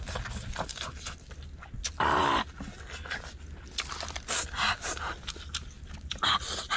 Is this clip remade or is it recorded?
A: recorded